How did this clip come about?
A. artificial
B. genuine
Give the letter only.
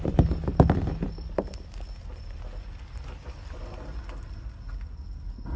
B